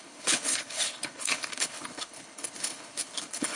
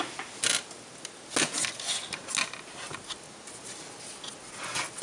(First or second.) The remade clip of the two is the first